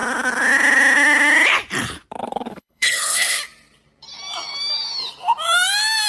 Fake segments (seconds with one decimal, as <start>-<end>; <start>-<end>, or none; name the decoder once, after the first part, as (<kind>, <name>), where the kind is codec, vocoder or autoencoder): 2.2-3.4 (codec, HILCodec)